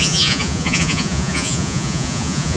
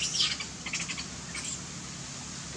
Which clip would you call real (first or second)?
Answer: second